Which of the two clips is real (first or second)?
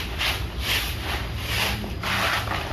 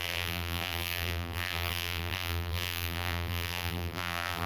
first